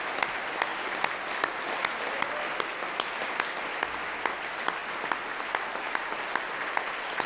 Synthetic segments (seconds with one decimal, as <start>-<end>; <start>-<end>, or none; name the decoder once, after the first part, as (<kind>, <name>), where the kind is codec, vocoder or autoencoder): none